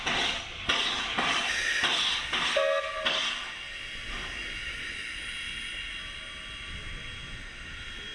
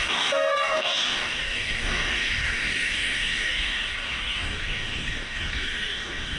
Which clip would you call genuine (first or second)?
first